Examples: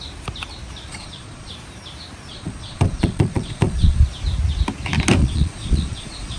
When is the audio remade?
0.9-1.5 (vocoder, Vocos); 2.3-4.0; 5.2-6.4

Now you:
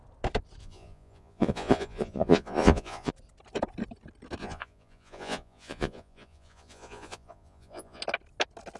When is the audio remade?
0.6-3.1 (vocoder, Vocos); 4.4-8.0

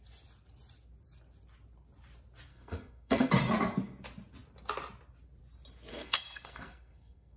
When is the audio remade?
2.5-3.3 (codec, SNAC); 5.9-7.4